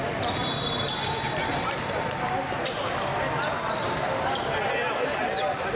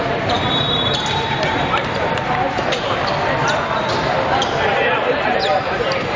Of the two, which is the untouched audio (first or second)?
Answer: first